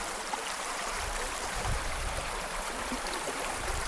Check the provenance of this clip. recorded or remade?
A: remade